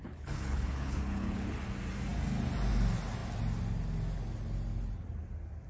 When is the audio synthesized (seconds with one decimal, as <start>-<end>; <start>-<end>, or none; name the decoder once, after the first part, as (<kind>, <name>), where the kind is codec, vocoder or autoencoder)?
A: 0.0-1.6 (codec, HILCodec)

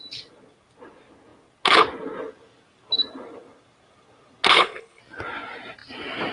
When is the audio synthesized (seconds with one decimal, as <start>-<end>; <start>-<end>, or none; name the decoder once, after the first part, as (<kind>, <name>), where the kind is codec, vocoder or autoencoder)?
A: 4.5-5.0 (codec, HILCodec)

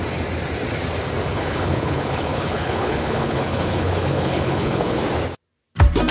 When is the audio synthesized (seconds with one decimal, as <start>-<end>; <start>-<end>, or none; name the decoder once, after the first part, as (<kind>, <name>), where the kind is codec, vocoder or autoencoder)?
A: 1.3-5.0 (codec, HILCodec)

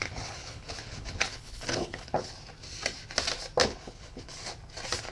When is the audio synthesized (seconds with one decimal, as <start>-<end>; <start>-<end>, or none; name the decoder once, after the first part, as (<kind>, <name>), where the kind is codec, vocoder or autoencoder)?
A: 0.0-2.3 (codec, HILCodec); 3.6-4.5

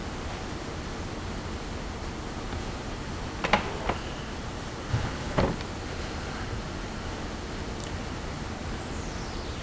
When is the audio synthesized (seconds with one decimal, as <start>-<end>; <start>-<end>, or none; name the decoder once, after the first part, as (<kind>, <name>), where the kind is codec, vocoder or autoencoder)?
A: 4.9-5.4 (codec, HILCodec)